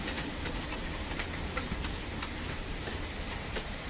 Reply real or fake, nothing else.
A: fake